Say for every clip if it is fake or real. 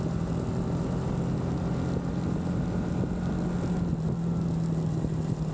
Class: real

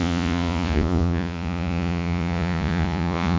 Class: fake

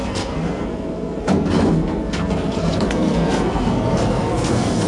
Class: fake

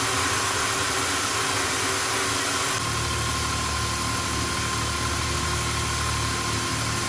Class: real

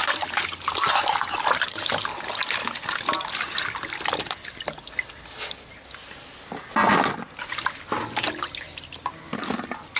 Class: real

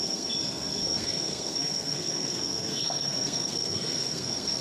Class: fake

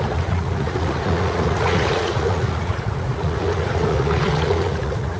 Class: fake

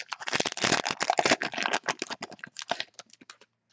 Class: real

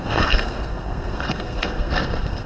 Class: fake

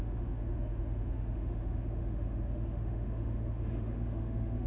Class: fake